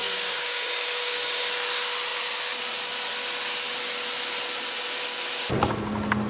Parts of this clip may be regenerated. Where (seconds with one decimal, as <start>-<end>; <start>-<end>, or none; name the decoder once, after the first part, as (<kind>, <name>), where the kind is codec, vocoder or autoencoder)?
0.0-1.4 (codec, DAC)

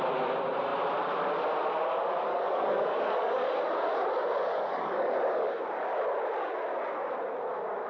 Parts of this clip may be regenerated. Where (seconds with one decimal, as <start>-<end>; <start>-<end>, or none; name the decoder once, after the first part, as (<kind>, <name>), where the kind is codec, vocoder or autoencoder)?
2.3-3.6 (codec, DAC); 4.5-5.5

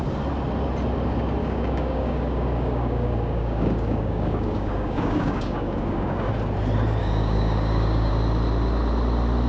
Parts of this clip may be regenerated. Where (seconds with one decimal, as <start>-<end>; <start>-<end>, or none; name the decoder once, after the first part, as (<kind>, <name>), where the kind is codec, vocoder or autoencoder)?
1.4-6.3 (codec, DAC); 7.0-8.1

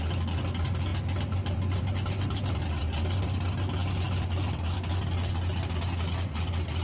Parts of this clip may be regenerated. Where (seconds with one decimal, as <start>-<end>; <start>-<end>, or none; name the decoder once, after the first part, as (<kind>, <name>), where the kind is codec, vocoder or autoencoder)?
none

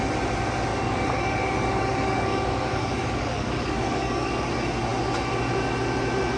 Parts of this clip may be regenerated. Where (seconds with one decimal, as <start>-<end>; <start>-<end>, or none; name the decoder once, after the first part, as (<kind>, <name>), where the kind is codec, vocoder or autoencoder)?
0.7-4.5 (codec, DAC)